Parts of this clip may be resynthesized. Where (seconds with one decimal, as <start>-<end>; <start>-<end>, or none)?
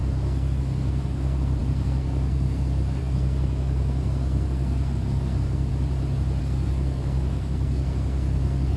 0.0-5.7; 6.4-8.8